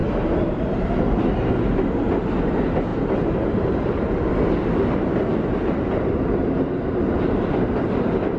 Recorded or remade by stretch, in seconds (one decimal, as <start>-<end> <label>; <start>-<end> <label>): 0.0-0.9 remade; 0.9-2.9 recorded; 2.9-4.3 remade; 4.3-8.4 recorded